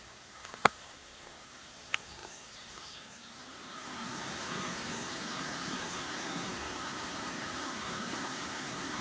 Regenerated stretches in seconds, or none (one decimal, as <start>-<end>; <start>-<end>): 0.0-9.0